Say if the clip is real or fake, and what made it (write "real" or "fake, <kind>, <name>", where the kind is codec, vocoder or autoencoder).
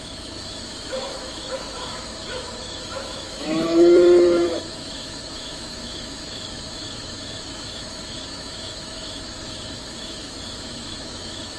fake, autoencoder, DAC-VAE